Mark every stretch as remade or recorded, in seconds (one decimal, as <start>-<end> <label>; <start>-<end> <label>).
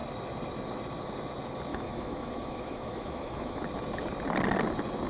0.0-1.7 recorded; 1.7-3.6 remade; 3.6-5.1 recorded